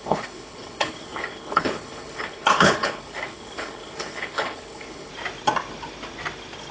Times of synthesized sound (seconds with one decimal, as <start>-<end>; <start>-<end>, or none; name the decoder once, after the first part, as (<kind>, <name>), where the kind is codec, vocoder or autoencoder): 0.0-5.1 (codec, HILCodec)